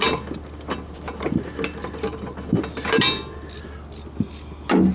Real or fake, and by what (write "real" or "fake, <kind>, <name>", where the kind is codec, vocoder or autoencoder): real